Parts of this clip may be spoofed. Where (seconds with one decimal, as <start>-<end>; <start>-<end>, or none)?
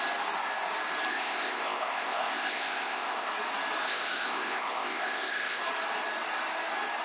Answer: 1.1-3.3; 3.8-5.6